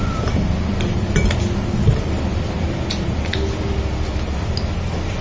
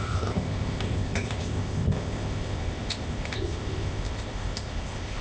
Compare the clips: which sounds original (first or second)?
first